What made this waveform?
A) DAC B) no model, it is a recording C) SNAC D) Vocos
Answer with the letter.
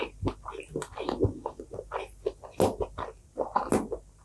B